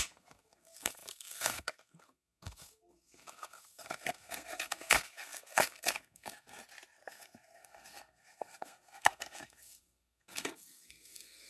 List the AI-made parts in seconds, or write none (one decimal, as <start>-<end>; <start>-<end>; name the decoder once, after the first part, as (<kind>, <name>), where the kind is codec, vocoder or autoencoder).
0.0-6.6 (codec, SNAC); 7.1-11.5